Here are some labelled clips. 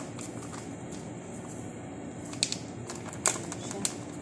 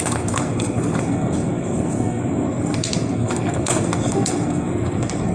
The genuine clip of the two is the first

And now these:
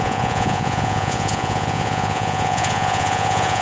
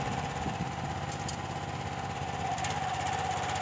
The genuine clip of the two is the second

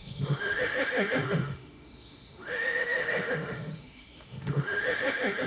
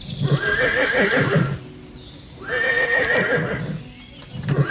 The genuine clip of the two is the second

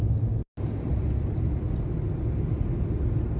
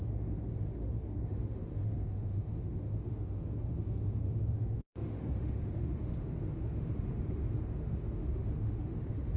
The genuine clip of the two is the first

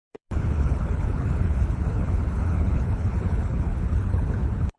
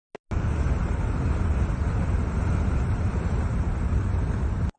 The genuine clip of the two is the second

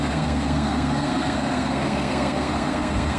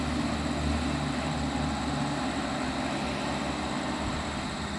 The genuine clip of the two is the second